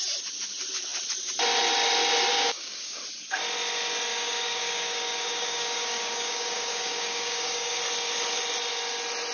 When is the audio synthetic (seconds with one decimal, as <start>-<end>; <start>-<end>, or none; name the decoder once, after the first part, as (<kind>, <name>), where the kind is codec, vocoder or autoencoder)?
2.3-3.0 (codec, DAC); 4.1-7.8